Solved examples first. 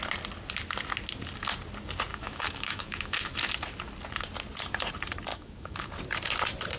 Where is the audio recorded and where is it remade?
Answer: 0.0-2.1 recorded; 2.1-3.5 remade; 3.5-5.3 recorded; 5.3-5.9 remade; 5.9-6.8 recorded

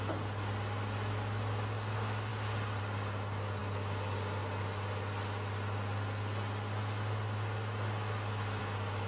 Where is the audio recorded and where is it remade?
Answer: 0.0-9.1 recorded

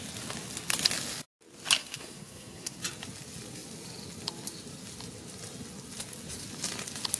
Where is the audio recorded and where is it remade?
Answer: 0.0-1.8 recorded; 1.8-2.8 remade; 2.8-7.2 recorded

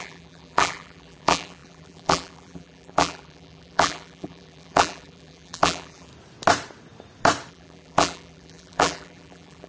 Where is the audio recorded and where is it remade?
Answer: 0.0-6.1 remade; 6.1-7.5 recorded; 7.5-9.7 remade